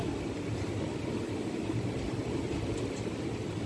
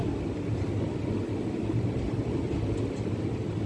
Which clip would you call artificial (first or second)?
first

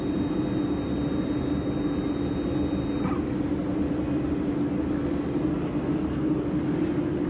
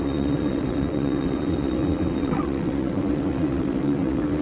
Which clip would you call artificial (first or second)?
second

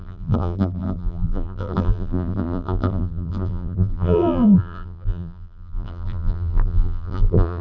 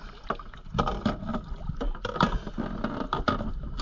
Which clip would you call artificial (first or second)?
first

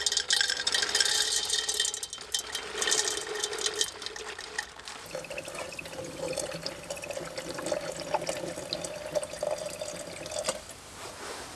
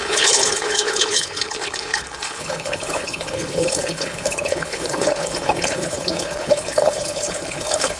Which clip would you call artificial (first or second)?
second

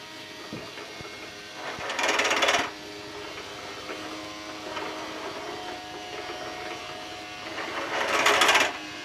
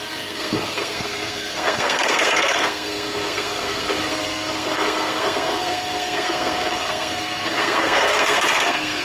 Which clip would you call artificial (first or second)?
second